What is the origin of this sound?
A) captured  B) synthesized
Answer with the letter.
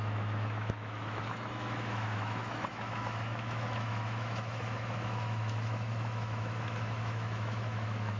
B